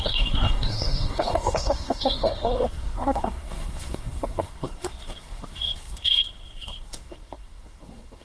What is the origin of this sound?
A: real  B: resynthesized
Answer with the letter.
B